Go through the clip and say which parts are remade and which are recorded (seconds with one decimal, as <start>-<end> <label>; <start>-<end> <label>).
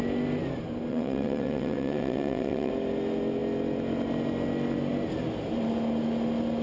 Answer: 0.0-0.9 recorded; 0.9-2.7 remade; 2.7-6.6 recorded